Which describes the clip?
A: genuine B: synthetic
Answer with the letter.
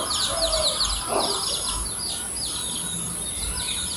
A